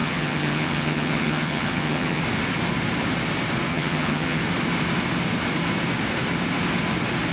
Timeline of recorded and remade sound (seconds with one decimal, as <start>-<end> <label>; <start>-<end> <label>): 0.0-2.2 remade; 2.2-3.7 recorded; 3.7-4.4 remade; 4.4-7.3 recorded